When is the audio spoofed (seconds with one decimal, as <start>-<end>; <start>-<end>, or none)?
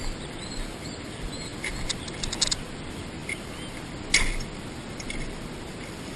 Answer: none